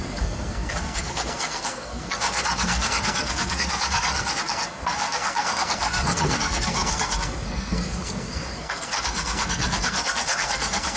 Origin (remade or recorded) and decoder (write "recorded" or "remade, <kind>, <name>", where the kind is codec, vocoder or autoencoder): remade, codec, SNAC